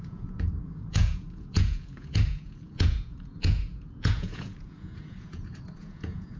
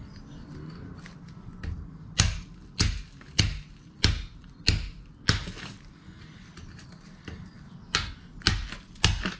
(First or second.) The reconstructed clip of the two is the first